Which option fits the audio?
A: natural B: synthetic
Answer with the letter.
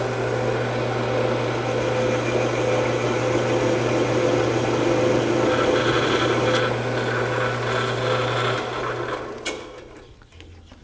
A